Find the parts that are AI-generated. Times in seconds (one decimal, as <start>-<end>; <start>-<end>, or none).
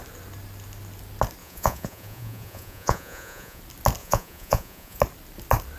1.4-3.6; 4.0-5.0